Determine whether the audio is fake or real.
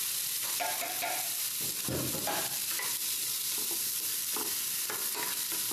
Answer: fake